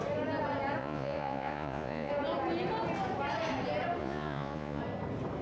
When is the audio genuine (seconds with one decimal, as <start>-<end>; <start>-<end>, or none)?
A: 0.0-0.8; 2.1-4.0; 4.8-5.4